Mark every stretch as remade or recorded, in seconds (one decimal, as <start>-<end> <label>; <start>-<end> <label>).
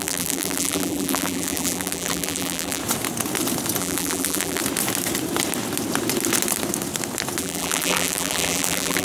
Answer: 0.0-2.8 remade; 2.8-3.8 recorded; 3.8-4.6 remade; 4.6-7.4 recorded; 7.4-9.0 remade